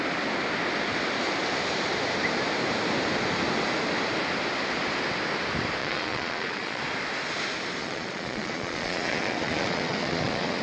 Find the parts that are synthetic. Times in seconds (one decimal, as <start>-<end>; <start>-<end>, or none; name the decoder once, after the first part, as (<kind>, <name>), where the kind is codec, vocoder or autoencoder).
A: 5.8-6.8 (vocoder, Vocos); 7.8-10.6